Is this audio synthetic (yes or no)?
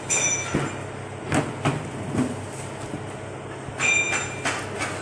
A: no